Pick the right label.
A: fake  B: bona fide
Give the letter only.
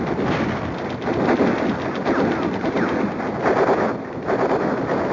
B